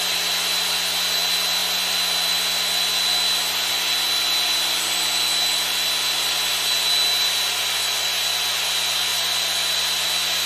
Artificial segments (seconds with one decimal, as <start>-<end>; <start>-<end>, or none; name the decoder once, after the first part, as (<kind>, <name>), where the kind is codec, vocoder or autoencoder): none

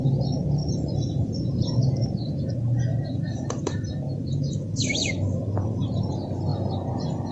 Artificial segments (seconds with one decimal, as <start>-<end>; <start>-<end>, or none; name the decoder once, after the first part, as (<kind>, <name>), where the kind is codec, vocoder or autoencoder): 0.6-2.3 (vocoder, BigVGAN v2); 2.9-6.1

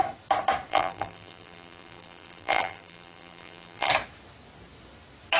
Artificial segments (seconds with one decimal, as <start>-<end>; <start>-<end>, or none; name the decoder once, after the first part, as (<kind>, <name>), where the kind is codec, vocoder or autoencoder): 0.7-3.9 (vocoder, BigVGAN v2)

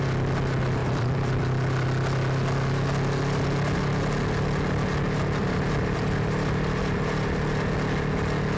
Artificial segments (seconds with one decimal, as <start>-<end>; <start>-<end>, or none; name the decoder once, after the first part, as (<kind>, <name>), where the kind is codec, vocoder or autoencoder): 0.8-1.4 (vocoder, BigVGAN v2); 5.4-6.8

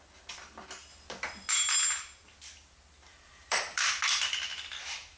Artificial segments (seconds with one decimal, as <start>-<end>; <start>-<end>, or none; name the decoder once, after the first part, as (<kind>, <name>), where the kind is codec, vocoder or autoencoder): 3.1-3.9 (vocoder, BigVGAN v2)